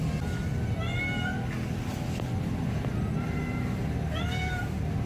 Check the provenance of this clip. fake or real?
real